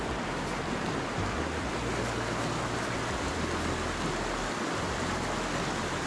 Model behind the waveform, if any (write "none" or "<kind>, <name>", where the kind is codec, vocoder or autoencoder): none